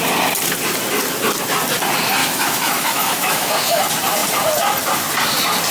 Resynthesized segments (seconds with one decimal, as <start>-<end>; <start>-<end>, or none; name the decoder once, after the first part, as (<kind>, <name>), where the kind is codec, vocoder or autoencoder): 2.2-3.8 (autoencoder, DAC-VAE)